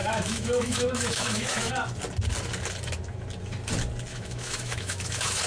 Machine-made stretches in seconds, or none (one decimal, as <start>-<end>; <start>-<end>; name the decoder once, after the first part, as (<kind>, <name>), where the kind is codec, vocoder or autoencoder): 0.0-1.7 (autoencoder, DAC-VAE); 4.1-5.5

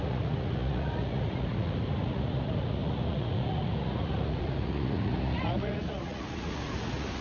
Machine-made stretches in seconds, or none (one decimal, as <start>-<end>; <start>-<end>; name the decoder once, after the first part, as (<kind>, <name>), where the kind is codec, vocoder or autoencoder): 0.0-7.2 (vocoder, Vocos)